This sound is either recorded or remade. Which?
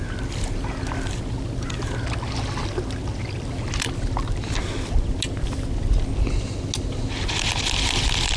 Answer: recorded